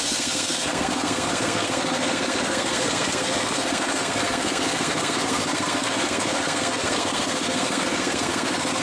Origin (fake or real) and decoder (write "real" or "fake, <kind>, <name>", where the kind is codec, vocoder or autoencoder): fake, codec, SNAC